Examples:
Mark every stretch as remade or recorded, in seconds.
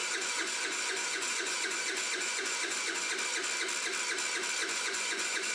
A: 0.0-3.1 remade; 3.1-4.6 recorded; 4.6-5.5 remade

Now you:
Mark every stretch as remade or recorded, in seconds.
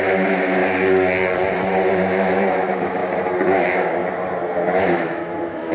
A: 0.0-0.6 remade; 0.6-1.9 recorded; 1.9-3.0 remade; 3.0-3.5 recorded; 3.5-4.0 remade; 4.0-4.8 recorded; 4.8-5.7 remade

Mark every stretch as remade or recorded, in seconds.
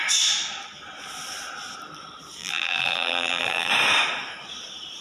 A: 0.0-2.4 recorded; 2.4-3.7 remade; 3.7-5.0 recorded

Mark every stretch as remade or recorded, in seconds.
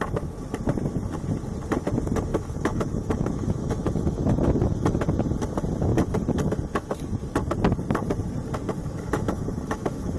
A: 0.0-2.3 recorded; 2.3-4.3 remade; 4.3-8.8 recorded; 8.8-10.2 remade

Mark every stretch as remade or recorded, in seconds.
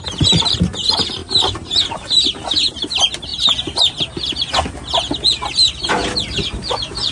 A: 0.0-7.1 recorded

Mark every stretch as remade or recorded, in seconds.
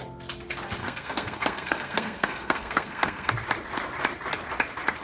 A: 0.0-0.8 recorded; 0.8-3.3 remade; 3.3-5.0 recorded